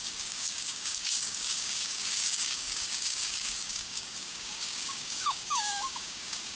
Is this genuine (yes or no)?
no